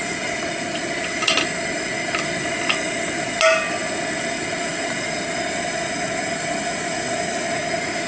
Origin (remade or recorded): recorded